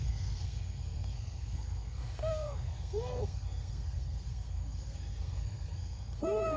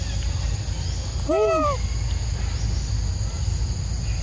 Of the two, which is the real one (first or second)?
second